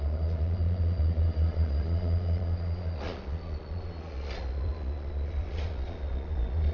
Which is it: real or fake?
fake